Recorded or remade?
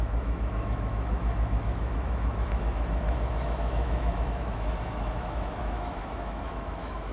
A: remade